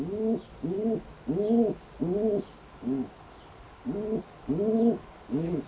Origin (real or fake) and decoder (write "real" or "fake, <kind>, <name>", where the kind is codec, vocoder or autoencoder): real